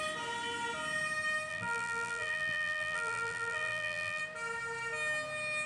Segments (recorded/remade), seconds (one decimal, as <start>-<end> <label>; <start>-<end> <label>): 0.0-1.5 recorded; 1.5-4.2 remade; 4.2-5.7 recorded